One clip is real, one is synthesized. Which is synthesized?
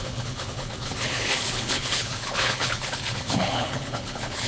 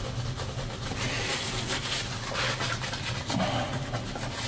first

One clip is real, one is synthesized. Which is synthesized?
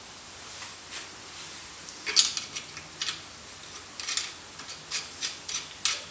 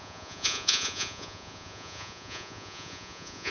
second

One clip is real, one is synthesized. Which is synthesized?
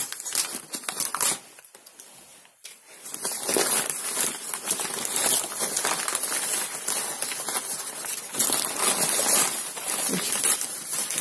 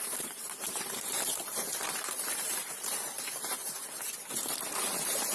second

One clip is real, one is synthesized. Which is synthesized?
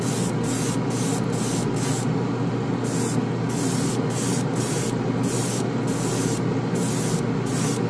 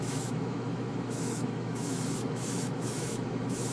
second